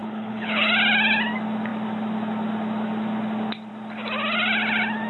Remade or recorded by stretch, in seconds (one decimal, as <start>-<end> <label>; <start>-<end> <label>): 0.0-0.7 remade; 0.7-5.1 recorded